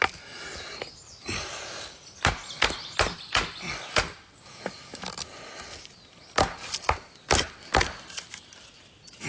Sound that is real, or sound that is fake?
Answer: real